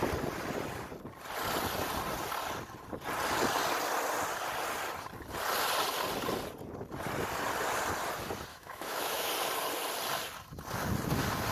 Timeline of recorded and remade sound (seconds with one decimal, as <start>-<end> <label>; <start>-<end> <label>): 0.0-8.5 recorded; 8.5-9.3 remade; 9.3-11.5 recorded